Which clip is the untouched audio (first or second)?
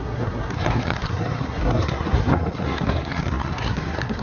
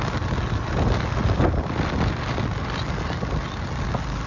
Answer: second